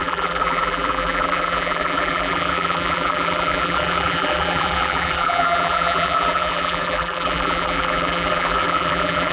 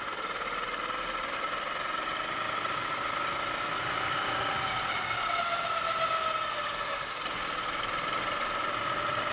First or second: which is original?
second